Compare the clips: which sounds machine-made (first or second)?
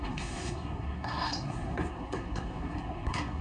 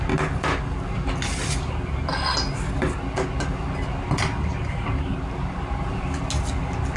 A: first